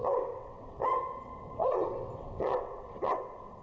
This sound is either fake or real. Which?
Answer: fake